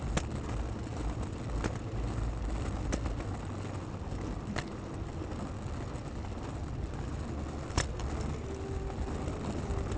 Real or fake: real